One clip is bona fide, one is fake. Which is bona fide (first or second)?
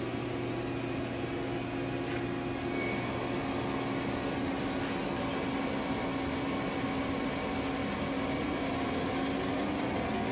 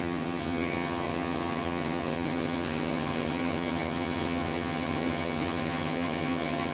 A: first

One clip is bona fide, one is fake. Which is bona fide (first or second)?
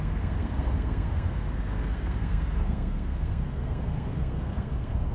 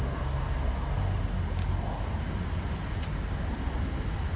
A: second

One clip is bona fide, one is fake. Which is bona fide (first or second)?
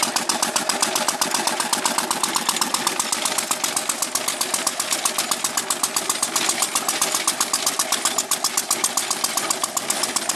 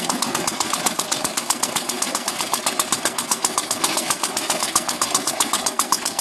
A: first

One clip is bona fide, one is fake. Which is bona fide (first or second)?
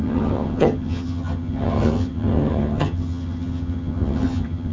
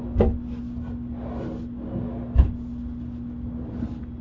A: second